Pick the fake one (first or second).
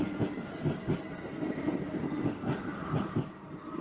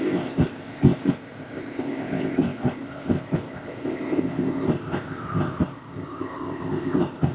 second